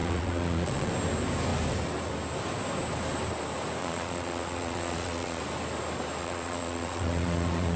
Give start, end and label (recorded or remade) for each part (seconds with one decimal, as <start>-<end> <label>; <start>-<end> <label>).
0.0-0.9 remade; 0.9-3.8 recorded; 3.8-5.4 remade; 5.4-6.2 recorded; 6.2-7.8 remade